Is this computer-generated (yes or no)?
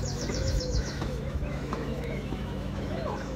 yes